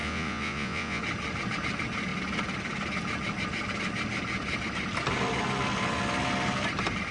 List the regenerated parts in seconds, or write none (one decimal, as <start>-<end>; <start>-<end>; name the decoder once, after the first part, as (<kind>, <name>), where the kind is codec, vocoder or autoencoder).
0.0-1.0 (vocoder, Vocos)